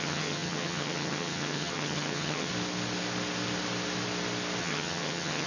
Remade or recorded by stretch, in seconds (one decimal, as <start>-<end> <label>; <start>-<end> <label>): 0.0-2.5 remade; 2.5-4.6 recorded; 4.6-5.5 remade